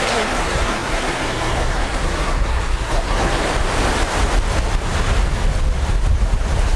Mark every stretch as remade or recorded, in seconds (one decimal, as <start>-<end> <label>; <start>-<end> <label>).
0.0-3.3 remade; 3.3-6.8 recorded